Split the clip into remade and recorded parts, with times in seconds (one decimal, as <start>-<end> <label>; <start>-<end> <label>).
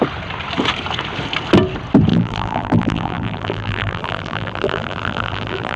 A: 0.0-2.1 recorded; 2.1-5.8 remade